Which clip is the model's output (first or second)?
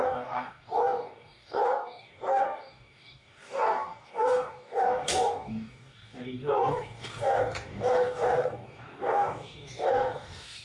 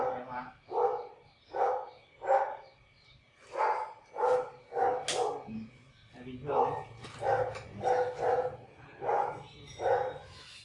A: first